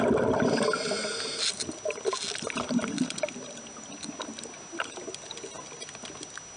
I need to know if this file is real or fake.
real